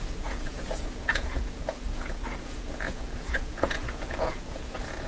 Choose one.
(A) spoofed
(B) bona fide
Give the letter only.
A